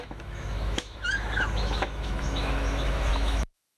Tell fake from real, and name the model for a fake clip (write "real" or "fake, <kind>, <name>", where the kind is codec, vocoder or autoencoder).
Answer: fake, autoencoder, DAC-VAE